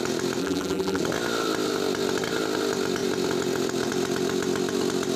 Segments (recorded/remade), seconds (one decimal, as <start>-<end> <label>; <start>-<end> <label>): 0.0-0.4 recorded; 0.4-1.0 remade; 1.0-5.2 recorded